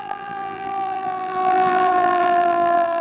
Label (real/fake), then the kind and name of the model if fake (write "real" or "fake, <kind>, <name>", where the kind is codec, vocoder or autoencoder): fake, vocoder, BigVGAN v2